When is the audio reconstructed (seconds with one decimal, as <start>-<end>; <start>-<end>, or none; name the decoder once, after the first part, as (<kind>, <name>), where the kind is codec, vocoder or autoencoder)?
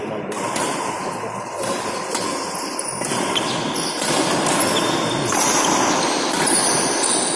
none